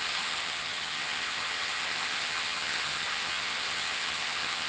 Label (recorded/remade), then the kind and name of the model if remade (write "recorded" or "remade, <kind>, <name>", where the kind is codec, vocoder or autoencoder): remade, vocoder, HiFi-GAN